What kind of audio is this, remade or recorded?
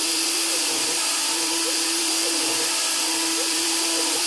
remade